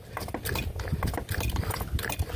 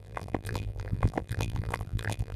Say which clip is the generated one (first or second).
second